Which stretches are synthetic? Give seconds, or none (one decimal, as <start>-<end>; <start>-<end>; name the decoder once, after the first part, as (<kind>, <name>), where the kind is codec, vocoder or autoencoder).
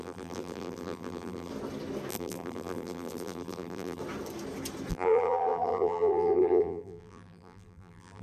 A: 0.0-1.5 (vocoder, BigVGAN v2); 2.1-4.0; 4.9-8.2